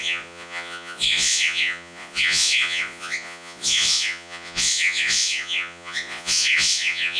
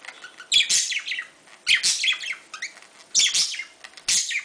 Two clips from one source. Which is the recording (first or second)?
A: second